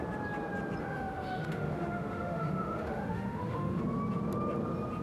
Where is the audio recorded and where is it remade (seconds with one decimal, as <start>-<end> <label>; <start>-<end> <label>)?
0.0-0.8 recorded; 0.8-3.8 remade; 3.8-5.0 recorded